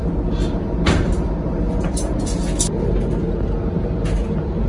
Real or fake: real